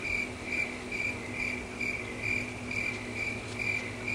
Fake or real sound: real